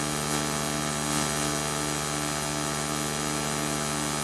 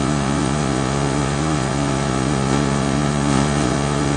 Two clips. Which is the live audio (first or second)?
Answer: first